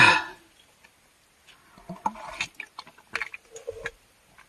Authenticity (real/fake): real